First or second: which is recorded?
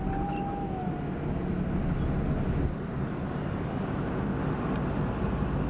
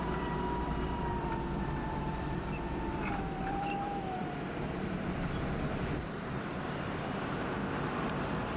first